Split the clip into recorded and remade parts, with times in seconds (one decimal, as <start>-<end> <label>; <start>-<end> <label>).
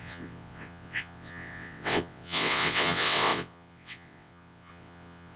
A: 0.0-5.4 remade